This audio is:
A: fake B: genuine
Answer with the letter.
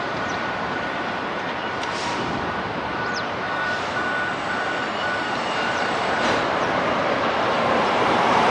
A